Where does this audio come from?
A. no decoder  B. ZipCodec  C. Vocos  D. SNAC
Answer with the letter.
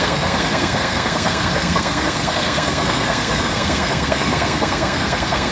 D